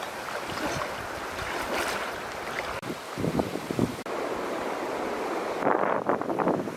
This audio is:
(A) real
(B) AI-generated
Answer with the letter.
A